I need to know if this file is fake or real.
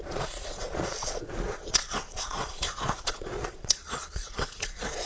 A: fake